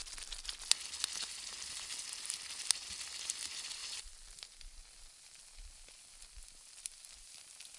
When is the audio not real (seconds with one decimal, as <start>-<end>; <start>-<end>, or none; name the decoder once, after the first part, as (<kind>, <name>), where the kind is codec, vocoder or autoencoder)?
none